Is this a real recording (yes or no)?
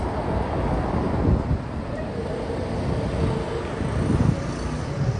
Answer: yes